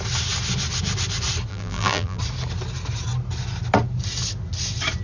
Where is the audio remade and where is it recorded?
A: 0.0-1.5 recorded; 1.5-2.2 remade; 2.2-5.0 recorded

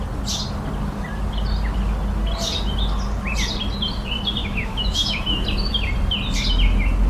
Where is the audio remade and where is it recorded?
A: 0.0-4.4 recorded; 4.4-5.2 remade; 5.2-7.1 recorded